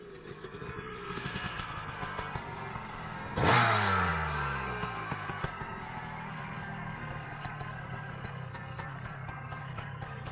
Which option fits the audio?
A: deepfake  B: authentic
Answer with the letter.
A